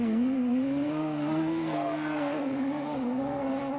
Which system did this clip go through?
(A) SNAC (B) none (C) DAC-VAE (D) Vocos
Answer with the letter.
A